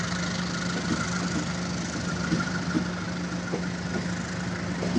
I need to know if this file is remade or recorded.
recorded